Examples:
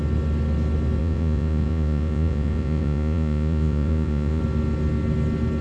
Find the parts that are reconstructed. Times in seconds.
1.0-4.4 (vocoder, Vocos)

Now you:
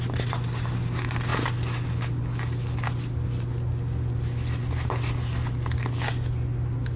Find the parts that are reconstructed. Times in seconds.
none

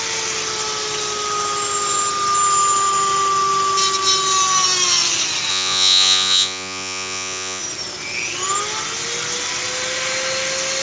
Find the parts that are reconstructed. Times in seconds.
5.5-7.6 (vocoder, Vocos)

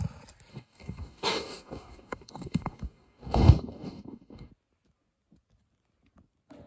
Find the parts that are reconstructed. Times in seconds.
0.5-4.5 (codec, DAC)

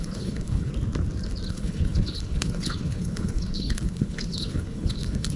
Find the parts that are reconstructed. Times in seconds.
0.0-0.7 (codec, HILCodec); 1.5-5.4

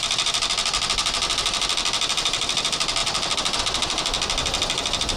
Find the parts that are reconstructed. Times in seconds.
3.0-3.6 (vocoder, BigVGAN v2)